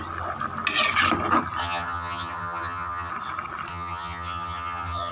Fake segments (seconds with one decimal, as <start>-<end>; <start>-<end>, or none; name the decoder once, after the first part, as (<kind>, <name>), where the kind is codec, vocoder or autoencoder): 1.6-3.1 (vocoder, HiFi-GAN); 3.7-5.1